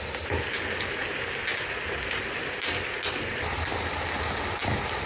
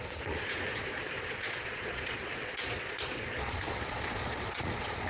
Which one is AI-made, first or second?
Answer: second